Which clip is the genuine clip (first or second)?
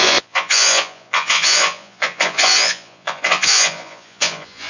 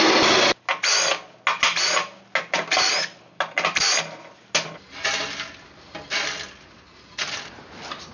second